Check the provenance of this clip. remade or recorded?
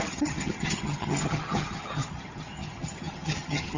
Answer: remade